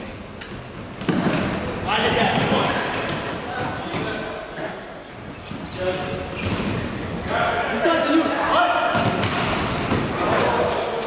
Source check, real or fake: real